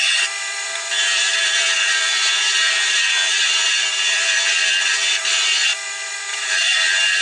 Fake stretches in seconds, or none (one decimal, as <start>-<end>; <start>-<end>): 0.0-7.2